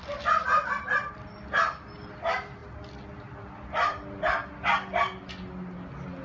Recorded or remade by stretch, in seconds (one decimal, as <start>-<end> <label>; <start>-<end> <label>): 0.0-6.2 recorded